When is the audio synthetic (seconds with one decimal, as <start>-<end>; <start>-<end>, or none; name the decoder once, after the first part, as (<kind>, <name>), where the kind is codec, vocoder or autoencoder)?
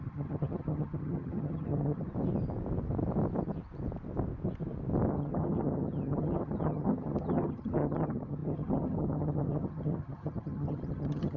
0.0-2.1 (vocoder, HiFi-GAN); 5.1-11.4